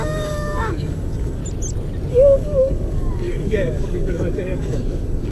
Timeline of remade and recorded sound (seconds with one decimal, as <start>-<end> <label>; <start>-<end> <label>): 0.0-1.4 remade; 1.4-2.1 recorded; 2.1-5.3 remade